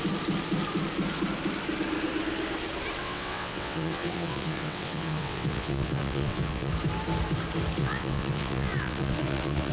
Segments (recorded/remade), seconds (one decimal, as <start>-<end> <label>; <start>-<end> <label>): 0.0-3.0 recorded; 3.0-6.7 remade; 6.7-7.8 recorded; 7.8-9.7 remade